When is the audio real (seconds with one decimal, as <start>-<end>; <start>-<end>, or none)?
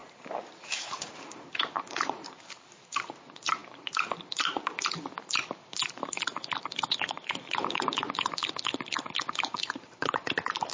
8.4-9.2